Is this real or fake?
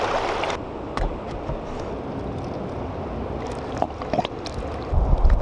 real